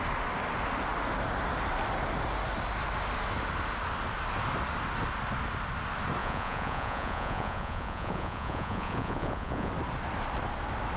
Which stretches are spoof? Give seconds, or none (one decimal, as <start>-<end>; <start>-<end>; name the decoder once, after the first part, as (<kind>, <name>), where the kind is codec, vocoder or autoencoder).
6.2-9.7 (vocoder, Vocos)